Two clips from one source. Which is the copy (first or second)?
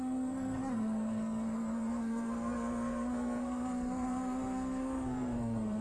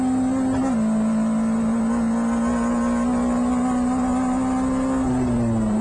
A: first